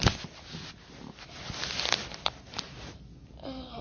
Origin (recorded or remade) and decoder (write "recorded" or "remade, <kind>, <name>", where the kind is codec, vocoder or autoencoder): recorded